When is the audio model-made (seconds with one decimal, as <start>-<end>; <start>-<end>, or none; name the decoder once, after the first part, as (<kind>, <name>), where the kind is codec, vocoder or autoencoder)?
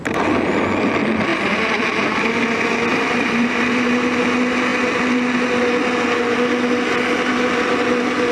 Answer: 1.3-2.2 (vocoder, BigVGAN v2); 2.9-3.9